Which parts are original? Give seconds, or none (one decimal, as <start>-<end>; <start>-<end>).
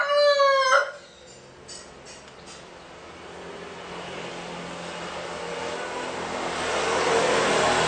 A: 0.0-7.9